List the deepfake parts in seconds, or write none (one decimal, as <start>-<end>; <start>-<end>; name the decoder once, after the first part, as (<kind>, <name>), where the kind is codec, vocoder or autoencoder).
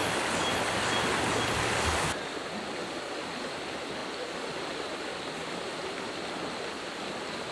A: none